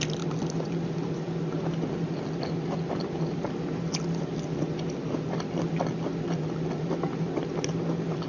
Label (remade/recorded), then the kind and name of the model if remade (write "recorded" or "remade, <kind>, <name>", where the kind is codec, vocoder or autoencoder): recorded